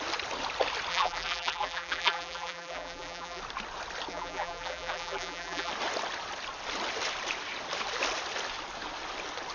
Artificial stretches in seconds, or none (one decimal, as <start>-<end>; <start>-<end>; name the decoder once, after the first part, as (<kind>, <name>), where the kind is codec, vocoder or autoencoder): 0.9-3.4 (vocoder, BigVGAN v2); 4.1-5.7